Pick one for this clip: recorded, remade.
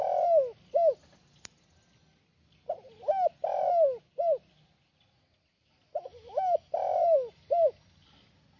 recorded